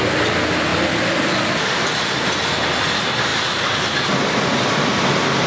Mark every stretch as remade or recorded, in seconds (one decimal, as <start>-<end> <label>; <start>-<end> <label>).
0.0-5.5 recorded